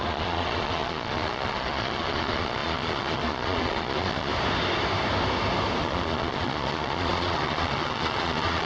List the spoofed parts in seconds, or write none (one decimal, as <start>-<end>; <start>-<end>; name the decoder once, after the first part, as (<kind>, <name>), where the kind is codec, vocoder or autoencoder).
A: 0.0-4.3 (vocoder, Vocos); 5.8-8.7